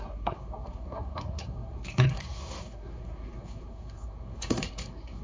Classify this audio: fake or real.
fake